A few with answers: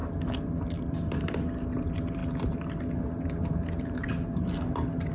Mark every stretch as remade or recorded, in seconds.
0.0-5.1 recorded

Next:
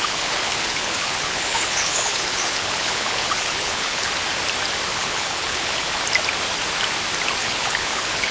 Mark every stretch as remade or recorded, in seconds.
0.0-4.1 remade; 4.1-4.9 recorded; 4.9-6.0 remade; 6.0-7.4 recorded; 7.4-8.3 remade

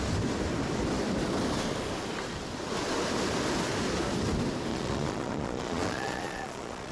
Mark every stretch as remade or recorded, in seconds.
0.0-4.7 recorded; 4.7-6.9 remade

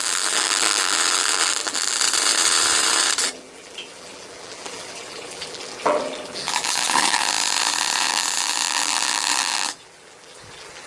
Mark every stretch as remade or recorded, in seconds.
0.0-2.0 remade; 2.0-3.2 recorded; 3.2-7.2 remade; 7.2-8.1 recorded; 8.1-10.9 remade

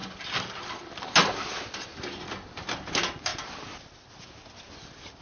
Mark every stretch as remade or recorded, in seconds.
0.0-5.2 recorded

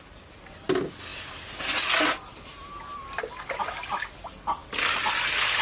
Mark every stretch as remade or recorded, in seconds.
0.0-5.6 recorded

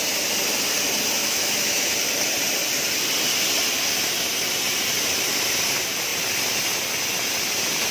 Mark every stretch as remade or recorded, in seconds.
0.0-1.2 recorded; 1.2-1.9 remade; 1.9-7.9 recorded

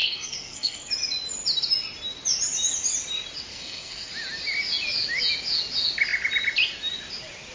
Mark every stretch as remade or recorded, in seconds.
0.0-0.9 remade; 0.9-3.5 recorded; 3.5-4.1 remade; 4.1-7.5 recorded